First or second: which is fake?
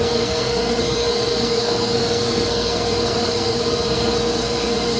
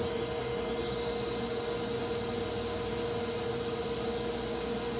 first